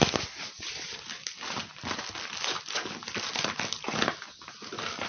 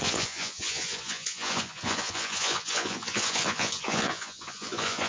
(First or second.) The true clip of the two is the first